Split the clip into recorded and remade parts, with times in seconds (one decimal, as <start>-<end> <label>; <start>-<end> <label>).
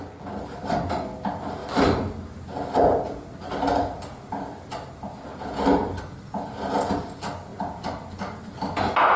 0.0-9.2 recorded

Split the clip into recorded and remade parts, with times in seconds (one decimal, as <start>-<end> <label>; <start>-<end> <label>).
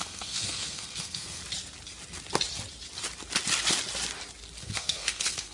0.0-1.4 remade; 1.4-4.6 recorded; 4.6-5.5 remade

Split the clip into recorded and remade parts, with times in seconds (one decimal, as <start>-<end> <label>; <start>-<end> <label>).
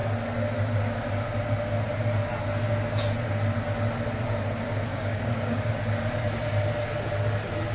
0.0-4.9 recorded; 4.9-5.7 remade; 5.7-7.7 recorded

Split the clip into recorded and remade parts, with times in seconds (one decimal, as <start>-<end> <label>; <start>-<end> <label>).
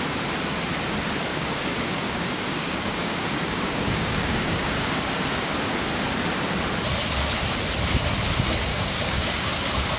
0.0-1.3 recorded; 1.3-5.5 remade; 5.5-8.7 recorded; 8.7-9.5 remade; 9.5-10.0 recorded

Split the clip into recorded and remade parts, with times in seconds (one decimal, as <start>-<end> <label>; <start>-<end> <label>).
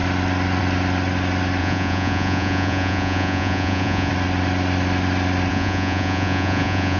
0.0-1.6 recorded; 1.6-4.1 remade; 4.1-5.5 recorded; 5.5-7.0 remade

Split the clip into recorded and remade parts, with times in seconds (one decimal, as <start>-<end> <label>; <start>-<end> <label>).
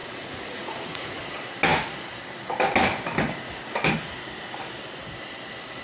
0.0-1.2 remade; 1.2-5.8 recorded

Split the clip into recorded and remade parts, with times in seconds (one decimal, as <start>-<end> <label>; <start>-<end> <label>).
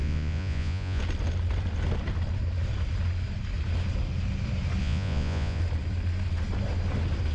0.0-1.0 remade; 1.0-4.8 recorded; 4.8-5.6 remade; 5.6-7.3 recorded